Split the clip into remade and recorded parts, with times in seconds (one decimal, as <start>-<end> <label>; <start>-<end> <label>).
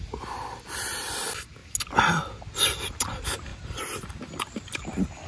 0.0-5.3 recorded